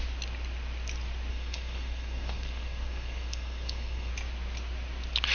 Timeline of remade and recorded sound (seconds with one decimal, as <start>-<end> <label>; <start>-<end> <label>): 0.0-1.3 recorded; 1.3-4.1 remade; 4.1-5.3 recorded